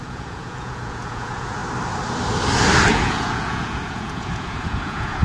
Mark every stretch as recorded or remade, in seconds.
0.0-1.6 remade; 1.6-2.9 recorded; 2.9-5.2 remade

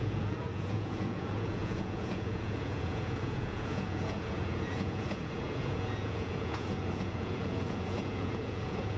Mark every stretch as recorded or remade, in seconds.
0.0-9.0 remade

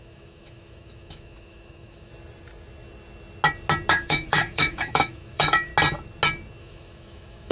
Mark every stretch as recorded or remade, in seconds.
0.0-2.1 remade; 2.1-3.9 recorded; 3.9-5.7 remade; 5.7-6.6 recorded; 6.6-7.5 remade

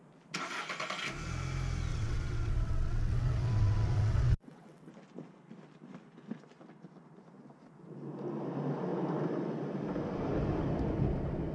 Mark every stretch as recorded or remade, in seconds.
0.0-1.9 recorded; 1.9-4.9 remade; 4.9-11.5 recorded

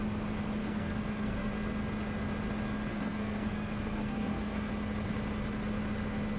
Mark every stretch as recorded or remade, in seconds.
0.0-0.6 recorded; 0.6-1.5 remade; 1.5-2.9 recorded; 2.9-4.7 remade; 4.7-6.4 recorded

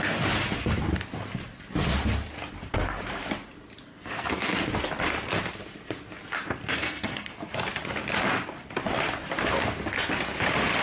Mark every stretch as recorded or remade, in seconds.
0.0-3.9 recorded; 3.9-4.6 remade; 4.6-6.7 recorded; 6.7-7.5 remade; 7.5-10.8 recorded

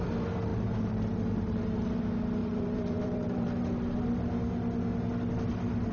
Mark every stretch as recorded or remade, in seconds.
0.0-0.5 recorded; 0.5-2.0 remade; 2.0-2.4 recorded; 2.4-3.5 remade; 3.5-5.9 recorded

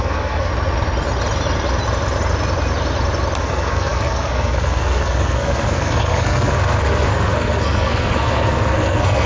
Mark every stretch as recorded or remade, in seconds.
0.0-0.5 remade; 0.5-3.4 recorded; 3.4-9.3 remade